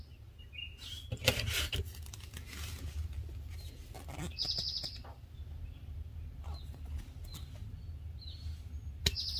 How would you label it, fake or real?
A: real